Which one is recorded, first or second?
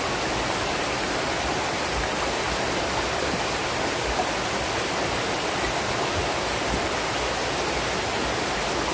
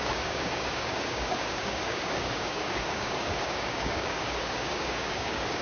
first